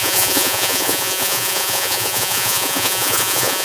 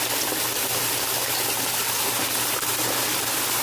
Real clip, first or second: second